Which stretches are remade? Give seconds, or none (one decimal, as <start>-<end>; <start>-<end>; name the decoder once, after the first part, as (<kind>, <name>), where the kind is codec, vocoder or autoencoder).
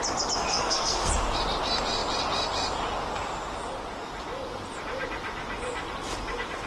0.5-1.1 (codec, SNAC)